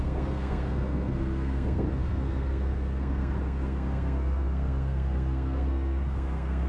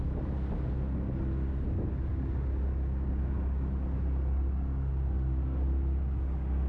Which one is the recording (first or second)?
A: second